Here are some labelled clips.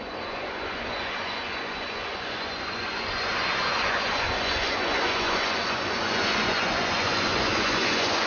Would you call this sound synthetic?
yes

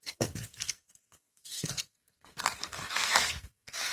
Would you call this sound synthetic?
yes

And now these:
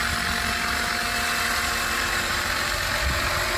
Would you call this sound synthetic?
no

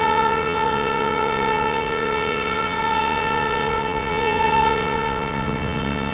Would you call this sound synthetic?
yes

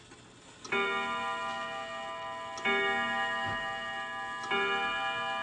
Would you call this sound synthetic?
no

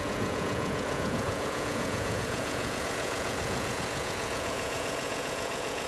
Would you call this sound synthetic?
yes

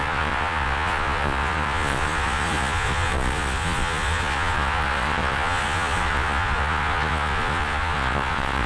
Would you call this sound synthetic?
yes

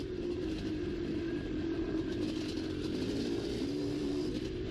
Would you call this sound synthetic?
no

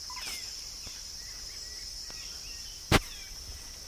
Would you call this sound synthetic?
no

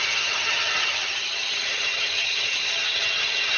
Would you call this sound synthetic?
yes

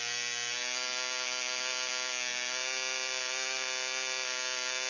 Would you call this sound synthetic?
no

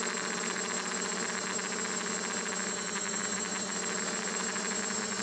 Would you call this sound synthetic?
no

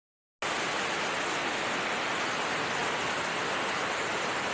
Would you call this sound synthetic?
no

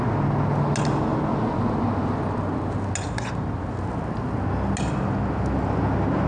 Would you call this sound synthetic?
no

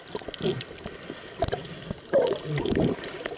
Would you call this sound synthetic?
no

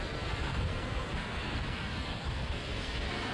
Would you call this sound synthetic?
yes